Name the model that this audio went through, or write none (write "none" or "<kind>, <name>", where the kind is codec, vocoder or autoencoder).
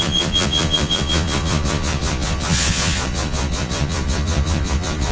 vocoder, Vocos